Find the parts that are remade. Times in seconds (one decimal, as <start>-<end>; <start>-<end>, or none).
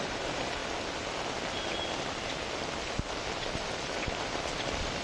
0.0-0.6; 3.1-5.0